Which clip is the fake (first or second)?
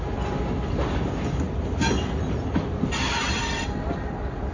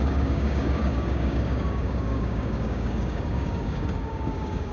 second